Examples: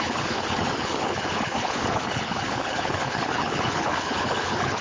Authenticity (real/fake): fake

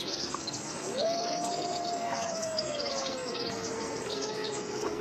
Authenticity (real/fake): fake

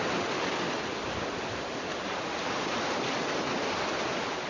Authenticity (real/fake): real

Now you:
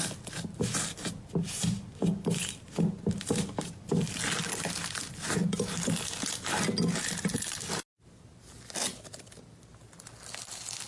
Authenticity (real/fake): real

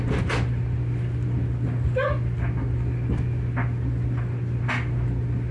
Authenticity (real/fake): real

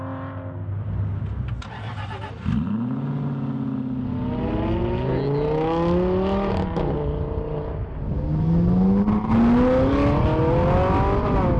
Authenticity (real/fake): real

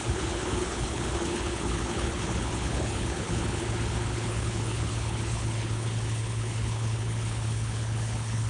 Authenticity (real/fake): fake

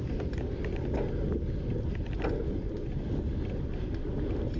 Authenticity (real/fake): real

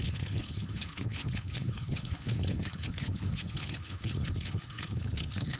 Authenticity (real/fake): fake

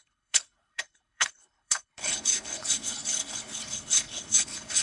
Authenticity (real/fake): fake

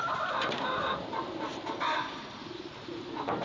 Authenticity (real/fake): real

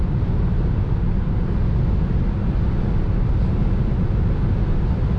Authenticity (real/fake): real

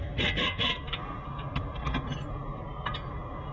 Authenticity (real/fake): real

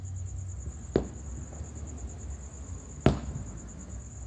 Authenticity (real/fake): real